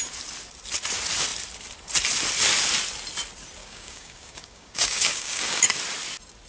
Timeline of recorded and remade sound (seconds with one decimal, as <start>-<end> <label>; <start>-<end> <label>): 0.0-3.6 recorded; 3.6-5.8 remade; 5.8-6.5 recorded